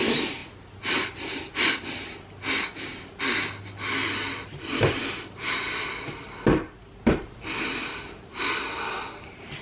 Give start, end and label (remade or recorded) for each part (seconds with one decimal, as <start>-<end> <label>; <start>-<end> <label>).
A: 0.0-9.6 recorded